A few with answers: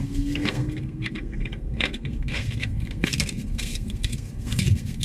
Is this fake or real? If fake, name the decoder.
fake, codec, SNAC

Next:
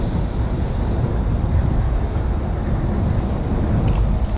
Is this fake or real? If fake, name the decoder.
real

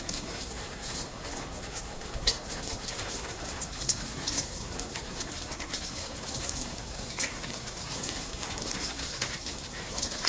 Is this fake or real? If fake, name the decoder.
fake, codec, SNAC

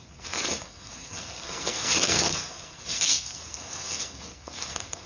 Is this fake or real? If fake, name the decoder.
fake, codec, SNAC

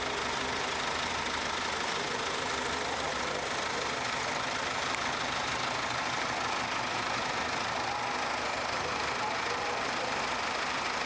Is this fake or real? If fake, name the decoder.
real